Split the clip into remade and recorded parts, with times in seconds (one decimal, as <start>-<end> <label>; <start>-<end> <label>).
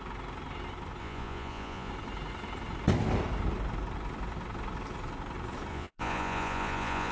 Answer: 0.0-1.0 recorded; 1.0-1.9 remade; 1.9-5.7 recorded; 5.7-7.1 remade